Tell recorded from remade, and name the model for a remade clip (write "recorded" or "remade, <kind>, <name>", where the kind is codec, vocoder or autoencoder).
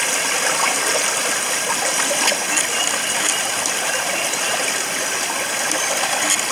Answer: recorded